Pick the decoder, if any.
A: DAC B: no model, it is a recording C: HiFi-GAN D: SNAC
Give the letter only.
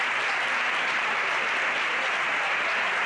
B